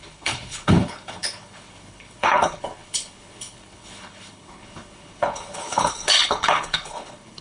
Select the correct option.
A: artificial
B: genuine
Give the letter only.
A